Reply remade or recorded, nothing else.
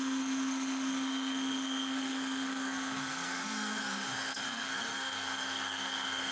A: remade